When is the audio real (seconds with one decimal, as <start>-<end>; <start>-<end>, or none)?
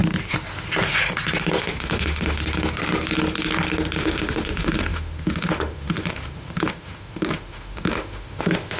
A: 0.0-1.6; 2.4-4.0